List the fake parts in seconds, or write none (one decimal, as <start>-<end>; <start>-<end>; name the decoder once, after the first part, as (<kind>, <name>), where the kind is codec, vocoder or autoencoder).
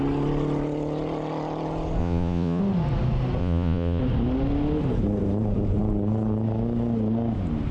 2.0-2.6 (vocoder, Vocos); 3.4-4.0